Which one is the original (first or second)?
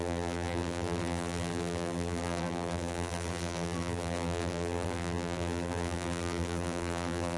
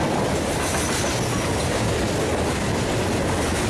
second